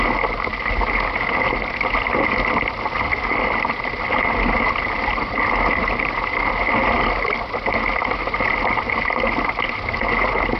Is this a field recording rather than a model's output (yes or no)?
yes